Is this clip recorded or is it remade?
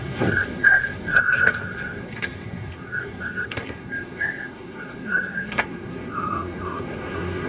remade